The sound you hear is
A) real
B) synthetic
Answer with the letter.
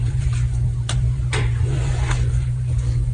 B